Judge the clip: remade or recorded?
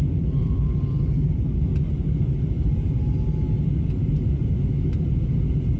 recorded